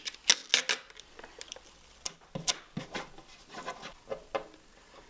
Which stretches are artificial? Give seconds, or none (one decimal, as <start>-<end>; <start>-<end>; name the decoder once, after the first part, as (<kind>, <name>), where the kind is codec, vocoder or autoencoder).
none